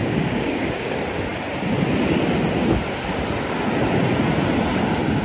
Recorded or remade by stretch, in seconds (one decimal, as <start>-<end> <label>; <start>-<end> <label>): 0.0-0.9 remade; 0.9-5.2 recorded